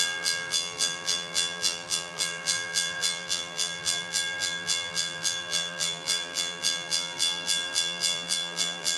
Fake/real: fake